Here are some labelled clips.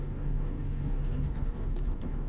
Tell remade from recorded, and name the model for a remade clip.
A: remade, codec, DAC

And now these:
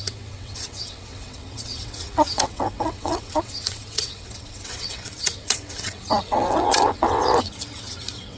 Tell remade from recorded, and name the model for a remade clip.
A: remade, vocoder, WaveNeXt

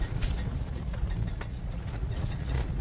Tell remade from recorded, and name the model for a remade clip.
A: remade, vocoder, Vocos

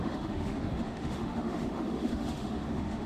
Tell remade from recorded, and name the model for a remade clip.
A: remade, autoencoder, DAC-VAE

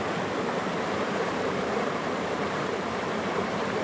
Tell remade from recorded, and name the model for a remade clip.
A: remade, vocoder, BigVGAN v2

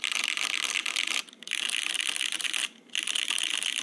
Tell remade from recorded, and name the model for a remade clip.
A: recorded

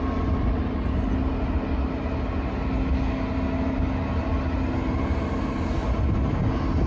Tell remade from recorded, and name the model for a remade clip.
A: recorded